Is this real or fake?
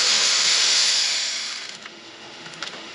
fake